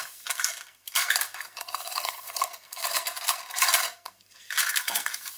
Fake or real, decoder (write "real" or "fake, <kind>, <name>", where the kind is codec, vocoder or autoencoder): fake, codec, SNAC